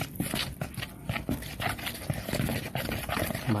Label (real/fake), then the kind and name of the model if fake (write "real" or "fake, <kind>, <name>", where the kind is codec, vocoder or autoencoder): real